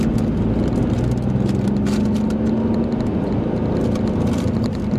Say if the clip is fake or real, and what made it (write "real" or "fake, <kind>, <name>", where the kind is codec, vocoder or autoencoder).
real